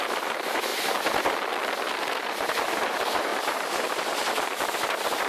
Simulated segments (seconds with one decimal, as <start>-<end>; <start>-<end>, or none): 0.0-0.7; 2.2-5.3

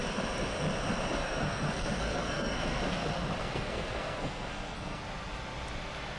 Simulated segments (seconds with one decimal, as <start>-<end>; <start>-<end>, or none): 1.2-2.7; 3.4-5.0

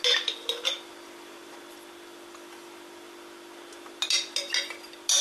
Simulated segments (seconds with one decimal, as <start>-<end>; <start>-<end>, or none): none

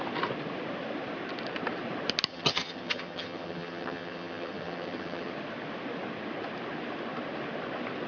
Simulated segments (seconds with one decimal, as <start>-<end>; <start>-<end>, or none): 2.3-5.3

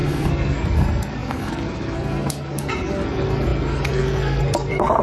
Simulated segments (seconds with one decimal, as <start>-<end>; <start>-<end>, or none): 0.0-5.0